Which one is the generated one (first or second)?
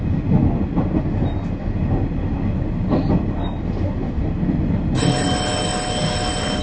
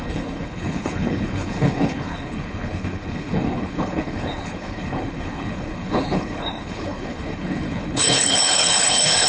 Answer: second